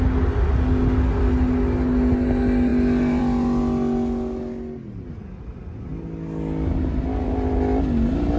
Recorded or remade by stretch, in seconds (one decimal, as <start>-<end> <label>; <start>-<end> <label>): 0.0-8.4 recorded